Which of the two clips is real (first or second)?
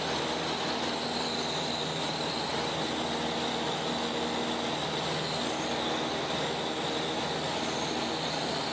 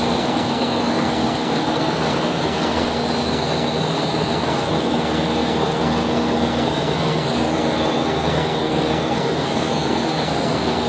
first